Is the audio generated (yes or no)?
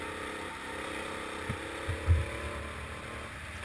no